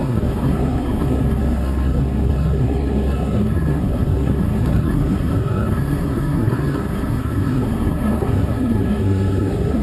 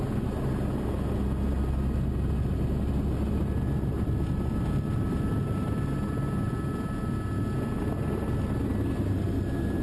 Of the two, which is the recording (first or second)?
second